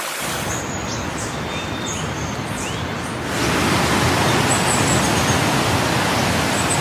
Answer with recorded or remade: recorded